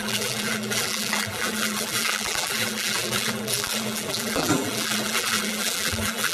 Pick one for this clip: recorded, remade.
remade